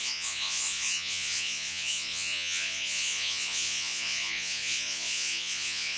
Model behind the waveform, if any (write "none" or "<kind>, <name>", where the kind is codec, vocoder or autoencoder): vocoder, Vocos